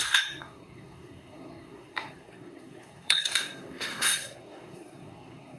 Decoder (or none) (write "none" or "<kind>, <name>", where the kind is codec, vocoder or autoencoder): codec, SNAC